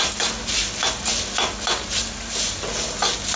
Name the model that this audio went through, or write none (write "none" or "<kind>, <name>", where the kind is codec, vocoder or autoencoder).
none